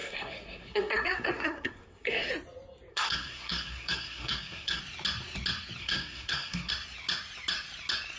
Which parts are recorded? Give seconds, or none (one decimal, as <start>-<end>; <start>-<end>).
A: 2.3-2.9; 4.8-5.8; 6.7-8.2